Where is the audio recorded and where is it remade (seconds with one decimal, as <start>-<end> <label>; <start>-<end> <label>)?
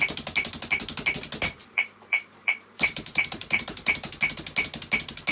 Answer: 0.0-1.6 recorded; 1.6-4.2 remade; 4.2-5.3 recorded